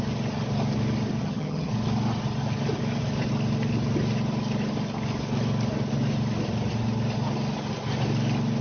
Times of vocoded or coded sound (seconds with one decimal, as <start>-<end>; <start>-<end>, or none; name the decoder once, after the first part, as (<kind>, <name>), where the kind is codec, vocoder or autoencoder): 1.2-1.7 (vocoder, HiFi-GAN)